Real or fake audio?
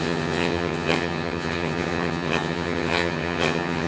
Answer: fake